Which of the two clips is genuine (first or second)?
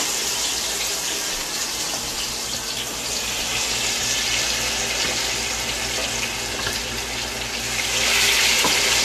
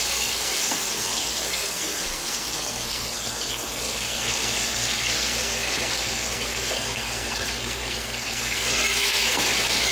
first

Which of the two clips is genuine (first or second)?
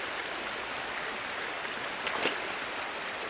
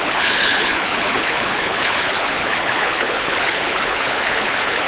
first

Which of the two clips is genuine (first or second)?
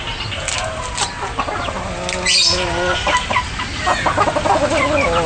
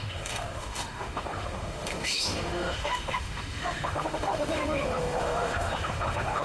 first